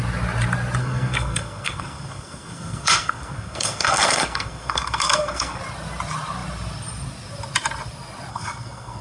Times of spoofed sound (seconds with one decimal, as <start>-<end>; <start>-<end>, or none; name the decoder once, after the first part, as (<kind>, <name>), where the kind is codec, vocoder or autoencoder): 0.8-5.6 (codec, SNAC); 8.3-9.0